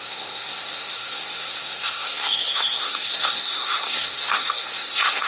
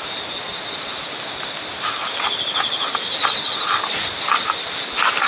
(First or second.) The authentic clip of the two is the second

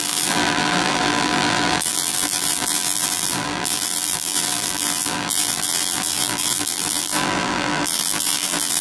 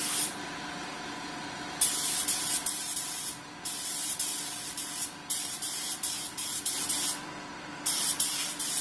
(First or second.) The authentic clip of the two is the second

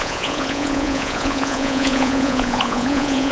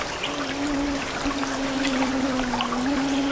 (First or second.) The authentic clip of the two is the second